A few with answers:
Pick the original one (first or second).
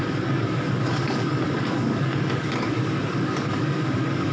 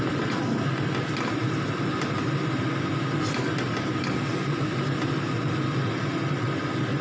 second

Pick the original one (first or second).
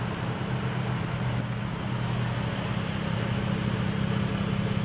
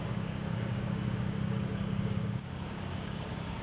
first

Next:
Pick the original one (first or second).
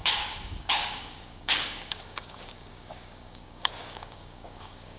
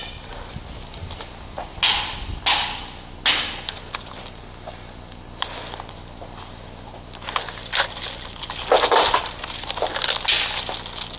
second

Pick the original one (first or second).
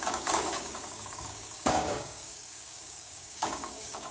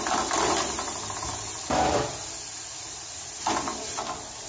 second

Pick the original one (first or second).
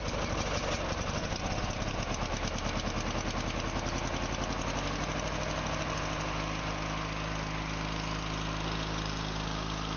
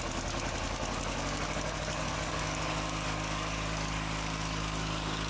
first